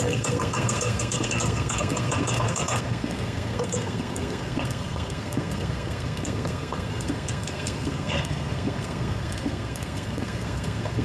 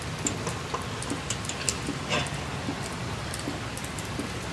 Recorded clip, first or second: second